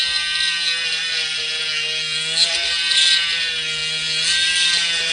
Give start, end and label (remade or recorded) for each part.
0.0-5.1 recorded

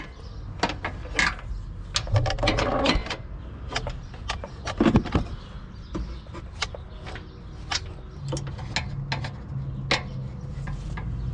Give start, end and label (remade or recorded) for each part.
0.0-11.3 recorded

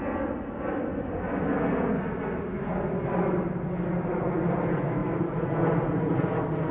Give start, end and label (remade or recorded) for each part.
0.0-6.7 recorded

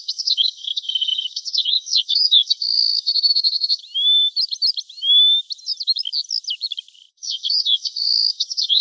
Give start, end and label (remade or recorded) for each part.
0.0-3.8 remade; 3.8-7.1 recorded; 7.1-8.8 remade

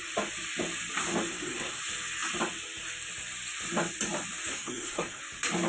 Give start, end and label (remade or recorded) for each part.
0.0-1.3 recorded; 1.3-1.8 remade; 1.8-4.5 recorded; 4.5-5.2 remade; 5.2-5.7 recorded